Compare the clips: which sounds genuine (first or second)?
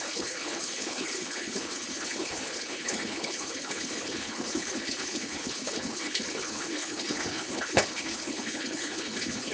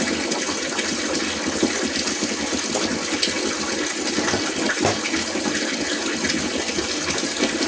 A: second